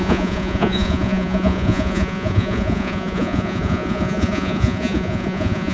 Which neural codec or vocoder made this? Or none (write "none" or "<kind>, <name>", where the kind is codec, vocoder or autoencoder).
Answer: vocoder, Vocos